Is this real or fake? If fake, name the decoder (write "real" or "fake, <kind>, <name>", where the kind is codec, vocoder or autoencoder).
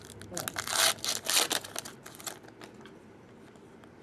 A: real